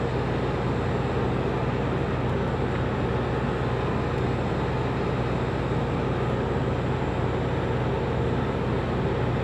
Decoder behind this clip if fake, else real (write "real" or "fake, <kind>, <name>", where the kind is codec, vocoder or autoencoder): real